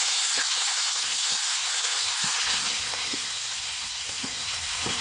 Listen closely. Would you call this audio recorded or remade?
remade